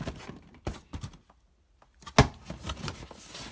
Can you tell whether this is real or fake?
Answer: real